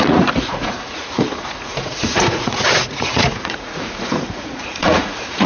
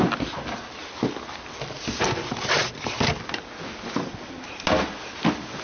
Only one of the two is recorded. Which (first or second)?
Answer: second